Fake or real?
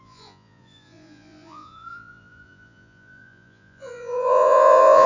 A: fake